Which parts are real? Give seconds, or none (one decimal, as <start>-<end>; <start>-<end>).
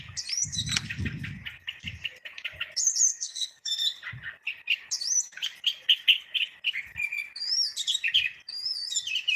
0.0-3.1; 3.7-9.4